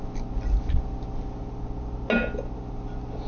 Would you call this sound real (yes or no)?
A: yes